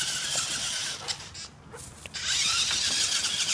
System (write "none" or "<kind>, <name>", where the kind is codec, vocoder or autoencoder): none